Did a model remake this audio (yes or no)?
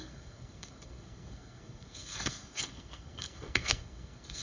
yes